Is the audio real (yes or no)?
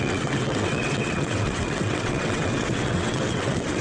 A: no